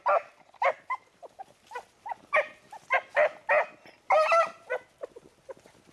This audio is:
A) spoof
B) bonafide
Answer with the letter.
B